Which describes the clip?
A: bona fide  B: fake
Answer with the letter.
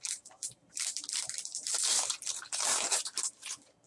B